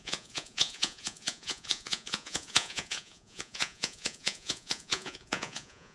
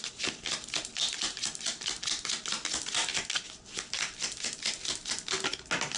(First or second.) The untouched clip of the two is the second